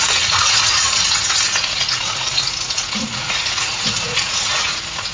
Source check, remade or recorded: remade